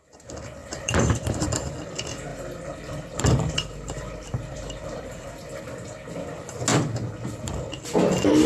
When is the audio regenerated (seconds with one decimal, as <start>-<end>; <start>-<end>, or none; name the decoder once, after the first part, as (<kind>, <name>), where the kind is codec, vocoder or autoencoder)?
0.6-1.7 (vocoder, BigVGAN v2); 2.3-5.6; 6.7-7.7